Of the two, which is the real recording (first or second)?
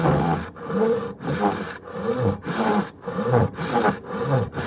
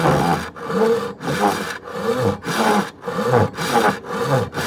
second